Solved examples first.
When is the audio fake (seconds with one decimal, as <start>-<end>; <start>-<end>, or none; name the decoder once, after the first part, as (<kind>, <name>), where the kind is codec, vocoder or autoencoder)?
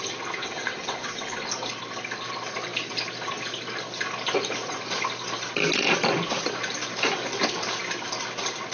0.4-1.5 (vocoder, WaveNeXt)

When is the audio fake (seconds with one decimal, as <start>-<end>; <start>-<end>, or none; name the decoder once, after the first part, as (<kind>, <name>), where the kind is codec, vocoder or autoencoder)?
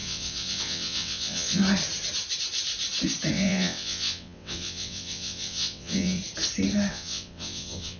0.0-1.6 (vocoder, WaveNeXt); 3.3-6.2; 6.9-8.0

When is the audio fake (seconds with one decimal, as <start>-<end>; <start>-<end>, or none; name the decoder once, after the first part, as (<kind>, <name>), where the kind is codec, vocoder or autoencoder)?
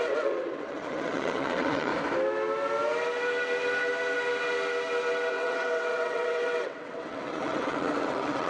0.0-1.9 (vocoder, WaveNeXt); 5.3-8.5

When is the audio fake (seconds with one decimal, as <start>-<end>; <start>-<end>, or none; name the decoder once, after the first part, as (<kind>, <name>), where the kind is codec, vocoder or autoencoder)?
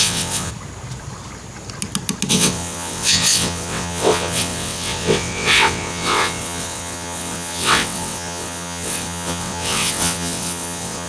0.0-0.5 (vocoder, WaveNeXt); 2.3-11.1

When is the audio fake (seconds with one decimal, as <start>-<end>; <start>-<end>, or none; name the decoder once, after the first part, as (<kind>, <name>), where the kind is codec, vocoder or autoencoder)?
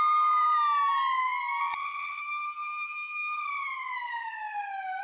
1.6-2.2 (vocoder, WaveNeXt)